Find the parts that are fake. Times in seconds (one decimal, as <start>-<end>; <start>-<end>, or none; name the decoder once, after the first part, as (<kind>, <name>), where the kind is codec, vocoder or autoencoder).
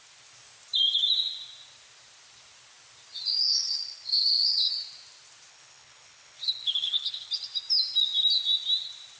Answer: 3.5-4.7 (codec, HILCodec); 5.5-7.3